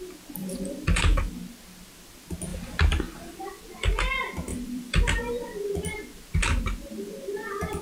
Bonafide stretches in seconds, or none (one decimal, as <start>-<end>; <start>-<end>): 0.0-0.4; 1.3-2.5; 3.6-4.5; 5.3-7.8